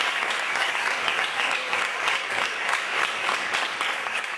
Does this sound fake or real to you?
fake